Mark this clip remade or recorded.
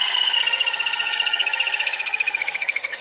remade